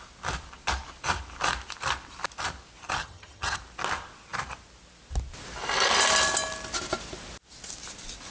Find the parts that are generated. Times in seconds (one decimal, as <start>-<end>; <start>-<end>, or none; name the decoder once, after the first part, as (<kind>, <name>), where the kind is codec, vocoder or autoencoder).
3.0-3.6 (vocoder, HiFi-GAN)